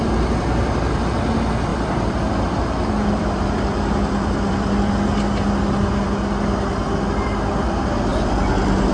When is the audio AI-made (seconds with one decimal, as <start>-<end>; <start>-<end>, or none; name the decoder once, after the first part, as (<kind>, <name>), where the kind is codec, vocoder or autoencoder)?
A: 0.0-1.1 (vocoder, BigVGAN v2); 1.7-4.9; 8.1-8.9